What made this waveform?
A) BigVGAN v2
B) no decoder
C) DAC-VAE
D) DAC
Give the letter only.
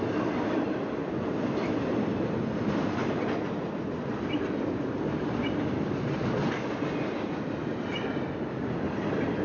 B